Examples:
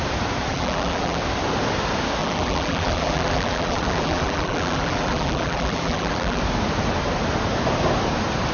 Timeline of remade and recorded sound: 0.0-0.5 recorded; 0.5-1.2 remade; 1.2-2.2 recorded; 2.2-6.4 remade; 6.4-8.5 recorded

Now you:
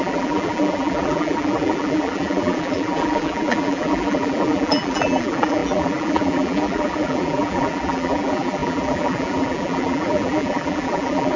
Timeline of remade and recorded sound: 0.0-11.4 remade